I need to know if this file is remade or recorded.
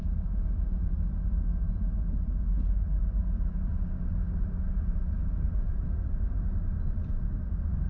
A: remade